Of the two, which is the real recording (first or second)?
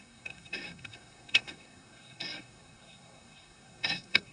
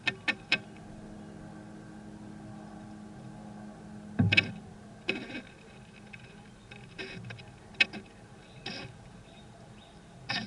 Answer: second